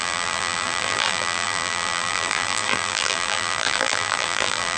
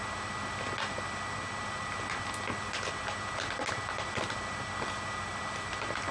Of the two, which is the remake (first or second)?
first